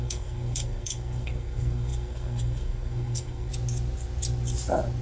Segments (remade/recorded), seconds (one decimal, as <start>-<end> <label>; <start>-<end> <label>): 0.0-3.5 remade; 3.5-5.0 recorded

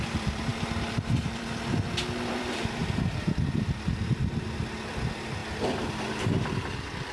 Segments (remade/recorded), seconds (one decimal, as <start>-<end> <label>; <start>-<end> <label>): 0.0-5.4 remade; 5.4-5.9 recorded; 5.9-7.1 remade

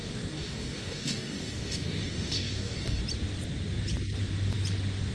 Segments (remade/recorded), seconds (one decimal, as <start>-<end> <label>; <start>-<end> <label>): 0.0-3.0 remade; 3.0-5.1 recorded

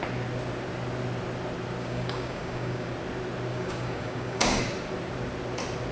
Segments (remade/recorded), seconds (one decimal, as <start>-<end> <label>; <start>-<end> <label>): 0.0-1.8 recorded; 1.8-2.9 remade; 2.9-3.5 recorded; 3.5-4.6 remade; 4.6-5.9 recorded